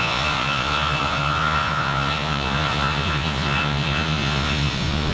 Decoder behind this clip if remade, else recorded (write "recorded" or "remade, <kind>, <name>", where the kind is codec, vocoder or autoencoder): remade, vocoder, Vocos